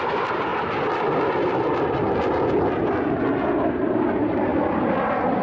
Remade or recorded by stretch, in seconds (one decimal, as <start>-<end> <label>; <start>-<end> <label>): 0.0-0.5 remade; 0.5-3.7 recorded; 3.7-4.5 remade; 4.5-5.4 recorded

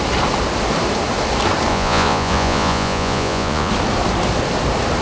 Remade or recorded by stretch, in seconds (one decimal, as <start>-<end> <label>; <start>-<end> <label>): 0.0-1.7 recorded; 1.7-3.7 remade; 3.7-5.0 recorded

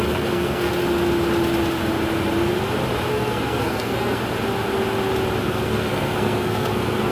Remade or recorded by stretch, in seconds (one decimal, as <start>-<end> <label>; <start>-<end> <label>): 0.0-0.7 remade; 0.7-3.1 recorded; 3.1-4.2 remade; 4.2-5.4 recorded; 5.4-7.1 remade

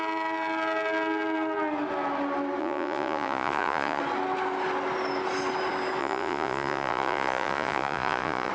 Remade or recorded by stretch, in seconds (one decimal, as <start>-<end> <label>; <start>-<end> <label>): 0.0-2.6 recorded; 2.6-4.0 remade; 4.0-6.0 recorded; 6.0-8.5 remade

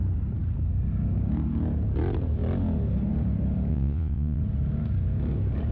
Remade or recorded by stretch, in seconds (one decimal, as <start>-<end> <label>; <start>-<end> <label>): 0.0-3.7 recorded; 3.7-4.4 remade; 4.4-5.7 recorded

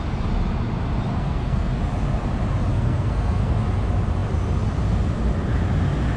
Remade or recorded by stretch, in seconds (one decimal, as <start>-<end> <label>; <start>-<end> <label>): 0.0-1.1 recorded; 1.1-1.8 remade; 1.8-2.7 recorded; 2.7-3.5 remade; 3.5-6.2 recorded

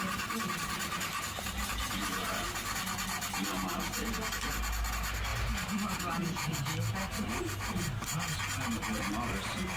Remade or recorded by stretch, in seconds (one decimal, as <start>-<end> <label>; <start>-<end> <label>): 0.0-9.8 recorded